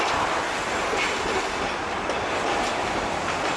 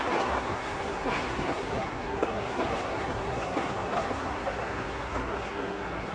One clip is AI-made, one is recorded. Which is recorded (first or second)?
first